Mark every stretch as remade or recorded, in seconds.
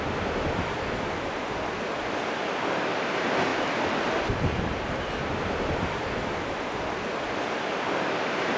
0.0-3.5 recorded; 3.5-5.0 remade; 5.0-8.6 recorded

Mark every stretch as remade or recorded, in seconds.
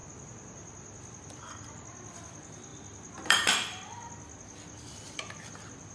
0.0-1.4 recorded; 1.4-5.9 remade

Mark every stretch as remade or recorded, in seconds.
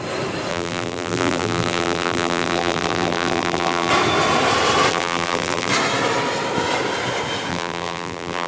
0.0-0.5 recorded; 0.5-3.9 remade; 3.9-4.9 recorded; 4.9-5.7 remade; 5.7-7.5 recorded; 7.5-8.5 remade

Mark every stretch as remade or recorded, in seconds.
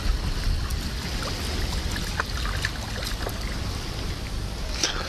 0.0-5.1 recorded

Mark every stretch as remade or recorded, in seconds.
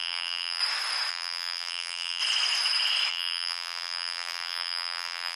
0.0-0.6 remade; 0.6-1.1 recorded; 1.1-2.2 remade; 2.2-3.1 recorded; 3.1-5.4 remade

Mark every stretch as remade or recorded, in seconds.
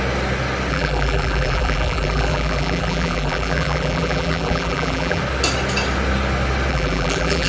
0.0-0.7 recorded; 0.7-5.2 remade; 5.2-6.7 recorded; 6.7-7.5 remade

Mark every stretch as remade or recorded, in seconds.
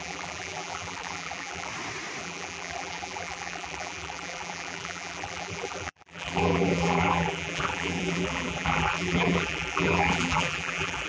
0.0-1.7 remade; 1.7-2.2 recorded; 2.2-11.1 remade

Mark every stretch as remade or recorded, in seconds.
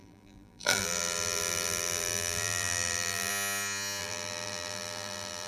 0.0-3.3 remade; 3.3-4.0 recorded; 4.0-5.5 remade